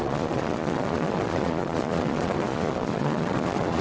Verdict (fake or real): fake